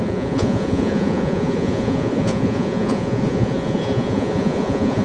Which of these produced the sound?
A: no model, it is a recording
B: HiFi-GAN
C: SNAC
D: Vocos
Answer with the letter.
D